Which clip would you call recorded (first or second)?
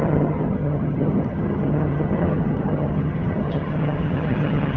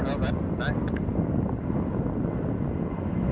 second